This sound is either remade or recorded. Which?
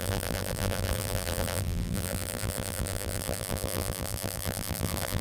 remade